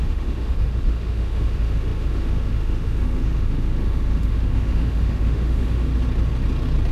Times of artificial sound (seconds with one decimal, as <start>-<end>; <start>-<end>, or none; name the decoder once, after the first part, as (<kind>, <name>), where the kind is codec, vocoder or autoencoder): 0.0-5.9 (autoencoder, DAC-VAE)